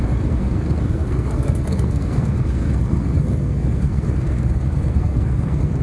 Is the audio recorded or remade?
remade